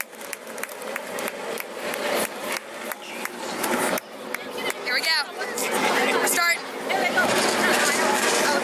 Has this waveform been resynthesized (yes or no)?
no